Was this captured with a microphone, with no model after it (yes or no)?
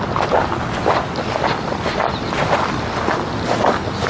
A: yes